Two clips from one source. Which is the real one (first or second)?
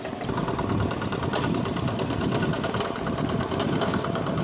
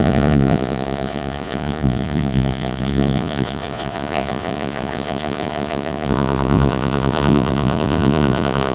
first